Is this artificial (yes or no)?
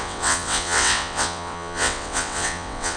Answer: yes